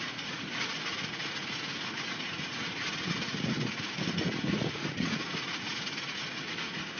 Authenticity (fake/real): fake